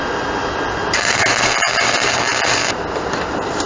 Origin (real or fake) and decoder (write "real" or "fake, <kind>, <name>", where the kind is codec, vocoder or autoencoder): real